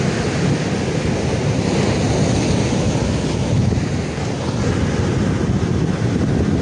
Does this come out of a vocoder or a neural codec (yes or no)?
no